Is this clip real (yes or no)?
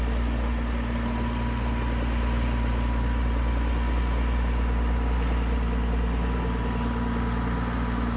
yes